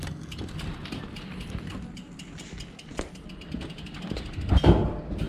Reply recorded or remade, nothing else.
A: recorded